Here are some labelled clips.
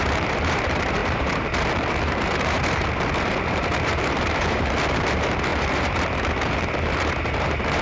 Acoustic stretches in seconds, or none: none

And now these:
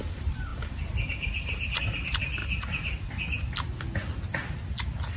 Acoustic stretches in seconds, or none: 2.4-5.2

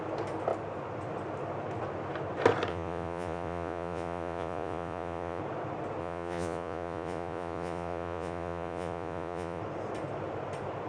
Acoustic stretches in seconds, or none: 0.0-2.7; 5.4-6.0; 9.6-10.9

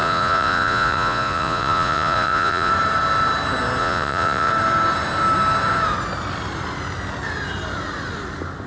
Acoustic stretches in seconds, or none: 2.7-3.8; 4.5-8.7

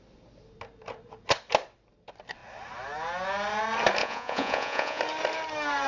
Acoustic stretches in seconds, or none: 0.0-4.0; 5.0-5.9

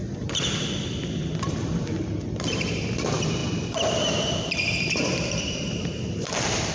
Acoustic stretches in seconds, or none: none

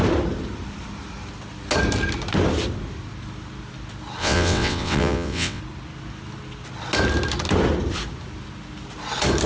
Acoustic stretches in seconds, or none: 0.0-4.2; 5.6-9.5